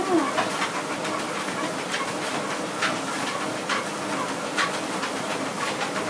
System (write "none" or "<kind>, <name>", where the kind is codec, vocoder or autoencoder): none